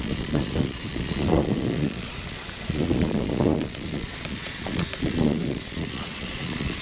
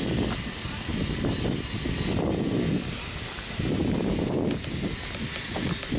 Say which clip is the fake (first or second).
first